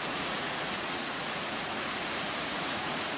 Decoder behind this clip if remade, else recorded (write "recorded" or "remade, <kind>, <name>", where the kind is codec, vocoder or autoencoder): remade, vocoder, Vocos